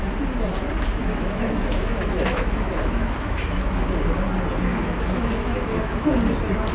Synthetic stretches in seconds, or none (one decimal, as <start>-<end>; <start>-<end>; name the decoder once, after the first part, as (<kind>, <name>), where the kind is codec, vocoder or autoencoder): 1.0-3.9 (autoencoder, DAC-VAE); 4.7-6.1